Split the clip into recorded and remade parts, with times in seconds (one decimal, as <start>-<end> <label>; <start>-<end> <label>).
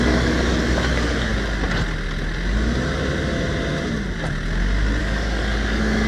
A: 0.0-1.3 remade; 1.3-5.0 recorded; 5.0-6.1 remade